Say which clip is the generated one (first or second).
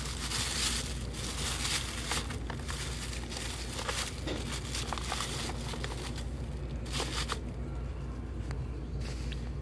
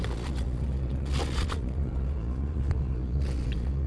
second